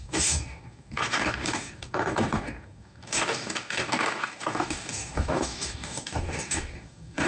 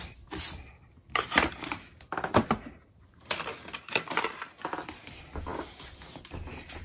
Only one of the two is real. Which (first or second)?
second